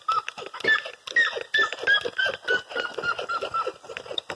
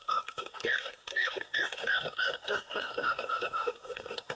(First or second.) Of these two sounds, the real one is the first